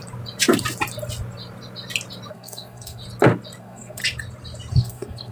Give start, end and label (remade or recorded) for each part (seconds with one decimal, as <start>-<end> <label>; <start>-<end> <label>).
0.0-2.3 recorded; 2.3-3.0 remade; 3.0-3.6 recorded; 3.6-4.0 remade; 4.0-4.7 recorded; 4.7-5.3 remade